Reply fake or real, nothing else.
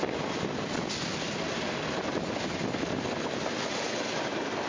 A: real